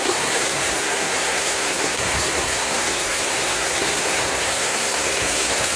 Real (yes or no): no